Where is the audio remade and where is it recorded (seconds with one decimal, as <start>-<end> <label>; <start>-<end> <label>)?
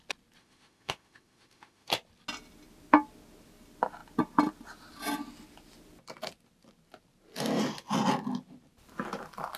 0.0-0.4 recorded; 0.4-1.9 remade; 1.9-9.6 recorded